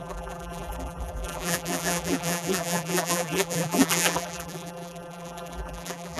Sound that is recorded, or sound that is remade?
remade